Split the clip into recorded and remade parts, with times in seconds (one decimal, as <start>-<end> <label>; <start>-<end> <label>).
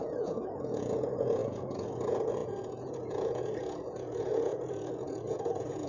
0.0-5.9 remade